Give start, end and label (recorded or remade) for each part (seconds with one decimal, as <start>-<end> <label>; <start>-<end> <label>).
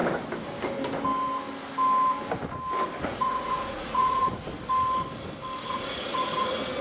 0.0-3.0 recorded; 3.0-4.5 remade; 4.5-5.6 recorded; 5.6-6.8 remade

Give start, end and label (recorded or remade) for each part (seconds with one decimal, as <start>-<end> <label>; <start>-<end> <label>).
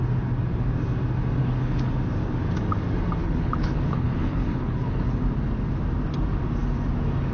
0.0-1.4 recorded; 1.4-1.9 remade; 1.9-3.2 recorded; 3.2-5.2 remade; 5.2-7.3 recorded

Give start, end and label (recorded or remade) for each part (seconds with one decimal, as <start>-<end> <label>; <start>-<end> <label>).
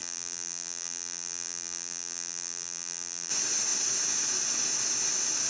0.0-3.3 remade; 3.3-5.5 recorded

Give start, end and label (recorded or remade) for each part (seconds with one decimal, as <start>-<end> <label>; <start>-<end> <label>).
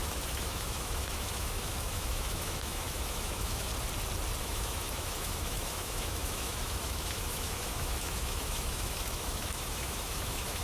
0.0-3.7 remade; 3.7-4.4 recorded; 4.4-10.6 remade